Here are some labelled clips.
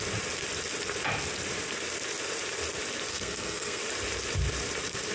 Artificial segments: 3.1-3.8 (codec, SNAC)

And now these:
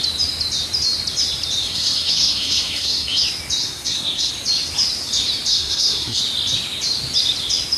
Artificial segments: 1.6-3.2 (codec, SNAC); 3.6-4.3; 5.5-6.2

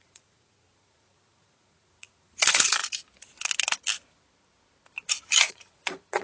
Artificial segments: 0.0-2.8 (vocoder, Vocos); 5.5-6.2